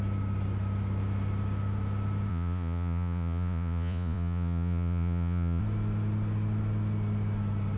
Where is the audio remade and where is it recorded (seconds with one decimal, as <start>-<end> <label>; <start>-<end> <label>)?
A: 0.0-2.3 recorded; 2.3-5.6 remade; 5.6-7.8 recorded